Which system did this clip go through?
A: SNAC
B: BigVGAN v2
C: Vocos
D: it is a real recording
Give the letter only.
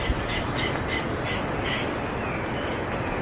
D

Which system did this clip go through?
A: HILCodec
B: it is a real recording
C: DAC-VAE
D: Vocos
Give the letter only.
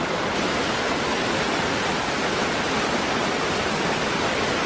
B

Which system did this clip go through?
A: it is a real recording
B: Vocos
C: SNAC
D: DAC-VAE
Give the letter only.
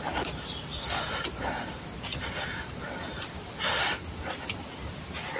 A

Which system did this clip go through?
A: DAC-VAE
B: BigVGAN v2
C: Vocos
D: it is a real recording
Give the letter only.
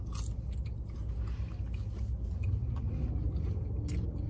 D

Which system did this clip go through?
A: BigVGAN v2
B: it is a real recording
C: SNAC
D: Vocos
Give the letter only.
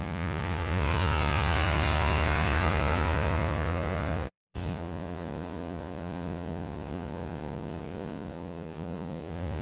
D